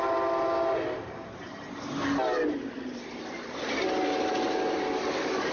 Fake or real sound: real